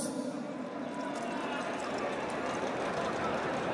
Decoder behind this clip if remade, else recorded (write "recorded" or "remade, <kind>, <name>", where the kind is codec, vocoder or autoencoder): recorded